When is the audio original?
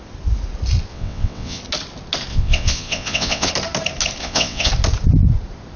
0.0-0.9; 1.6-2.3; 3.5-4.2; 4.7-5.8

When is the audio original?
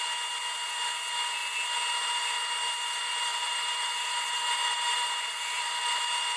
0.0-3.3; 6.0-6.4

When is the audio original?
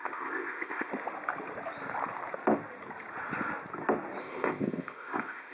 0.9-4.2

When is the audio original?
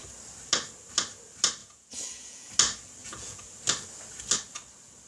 0.0-1.6; 2.5-3.0; 3.5-5.1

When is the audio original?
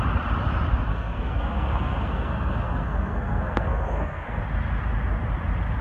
0.0-0.9; 4.4-5.8